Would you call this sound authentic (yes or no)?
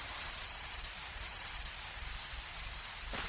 yes